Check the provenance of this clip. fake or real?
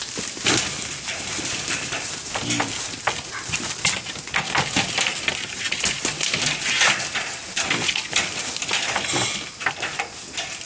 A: real